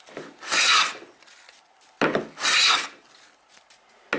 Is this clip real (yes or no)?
yes